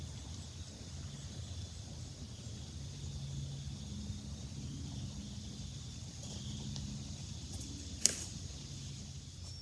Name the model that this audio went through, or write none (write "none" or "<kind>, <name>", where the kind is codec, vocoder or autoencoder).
none